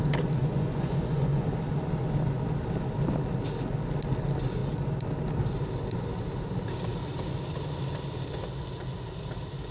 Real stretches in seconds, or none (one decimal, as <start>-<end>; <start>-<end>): 0.0-0.4; 1.4-9.7